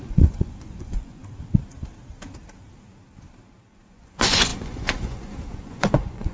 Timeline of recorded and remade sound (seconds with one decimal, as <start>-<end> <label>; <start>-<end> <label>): 0.0-1.2 remade; 1.2-3.7 recorded; 3.7-6.3 remade